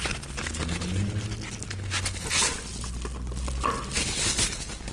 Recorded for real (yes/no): yes